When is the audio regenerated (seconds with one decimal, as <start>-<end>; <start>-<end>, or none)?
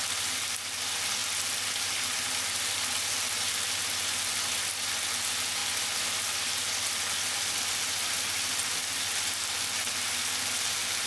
none